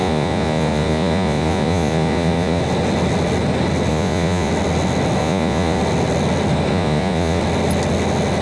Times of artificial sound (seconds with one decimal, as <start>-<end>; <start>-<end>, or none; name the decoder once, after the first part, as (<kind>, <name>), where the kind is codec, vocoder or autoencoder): 0.0-2.6 (vocoder, Vocos); 3.9-4.5; 5.2-5.8; 6.7-7.4